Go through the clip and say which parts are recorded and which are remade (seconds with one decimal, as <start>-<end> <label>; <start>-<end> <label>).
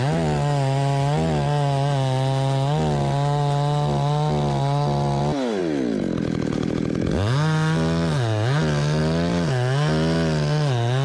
0.0-11.0 recorded